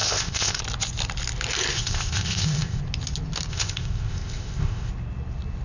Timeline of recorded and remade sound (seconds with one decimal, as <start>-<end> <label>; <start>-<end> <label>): 0.0-0.6 remade; 0.6-1.7 recorded; 1.7-2.8 remade; 2.8-3.5 recorded; 3.5-4.9 remade; 4.9-5.6 recorded